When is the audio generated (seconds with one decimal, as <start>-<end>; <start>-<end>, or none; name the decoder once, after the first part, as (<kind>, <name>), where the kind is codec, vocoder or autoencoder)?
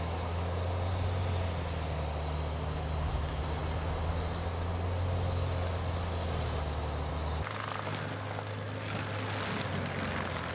none